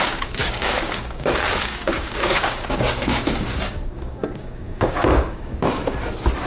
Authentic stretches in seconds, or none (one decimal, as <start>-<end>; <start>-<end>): 5.8-6.5